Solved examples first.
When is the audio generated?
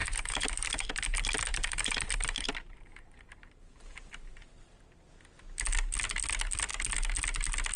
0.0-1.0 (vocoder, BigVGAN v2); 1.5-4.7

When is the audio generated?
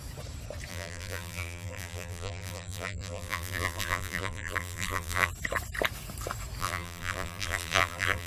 0.7-5.3 (vocoder, BigVGAN v2); 6.6-8.3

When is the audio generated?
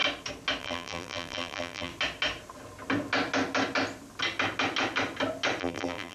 0.6-1.9 (vocoder, BigVGAN v2); 5.6-6.1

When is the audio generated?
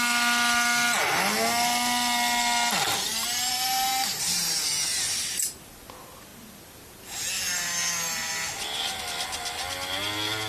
3.1-5.7 (vocoder, BigVGAN v2)